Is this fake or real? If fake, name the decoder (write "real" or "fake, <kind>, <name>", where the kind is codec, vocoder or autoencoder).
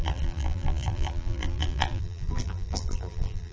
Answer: fake, vocoder, BigVGAN v2